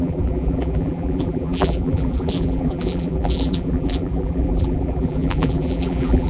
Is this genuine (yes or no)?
no